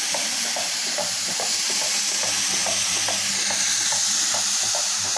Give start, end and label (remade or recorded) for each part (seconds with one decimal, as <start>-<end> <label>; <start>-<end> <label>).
0.0-2.6 remade; 2.6-4.5 recorded; 4.5-5.2 remade